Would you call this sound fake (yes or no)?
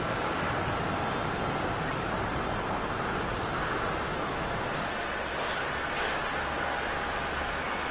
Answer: no